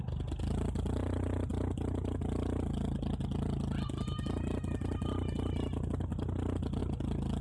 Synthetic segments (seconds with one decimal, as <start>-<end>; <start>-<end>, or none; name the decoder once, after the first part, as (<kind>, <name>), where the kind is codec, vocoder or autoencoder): none